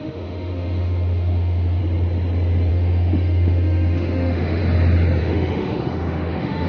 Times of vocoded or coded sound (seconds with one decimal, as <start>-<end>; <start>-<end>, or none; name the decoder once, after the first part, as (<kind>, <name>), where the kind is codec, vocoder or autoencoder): 0.0-1.8 (autoencoder, DAC-VAE); 2.7-4.6; 5.2-6.7